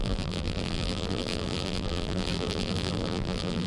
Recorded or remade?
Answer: remade